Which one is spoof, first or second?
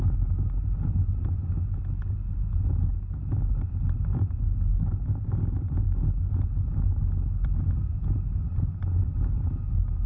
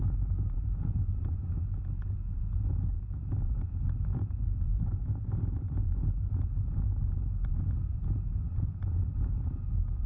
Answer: second